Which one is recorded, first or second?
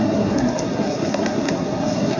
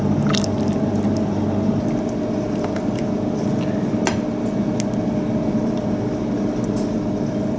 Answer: second